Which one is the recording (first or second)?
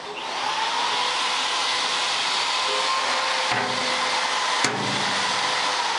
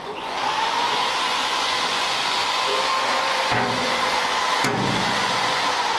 first